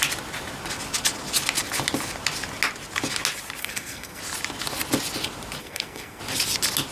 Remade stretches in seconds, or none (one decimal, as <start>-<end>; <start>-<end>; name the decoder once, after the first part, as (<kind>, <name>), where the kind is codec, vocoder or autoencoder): 3.6-4.2 (codec, SNAC); 5.6-6.2